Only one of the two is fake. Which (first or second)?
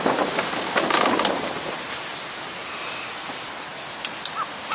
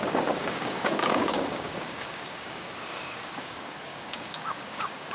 second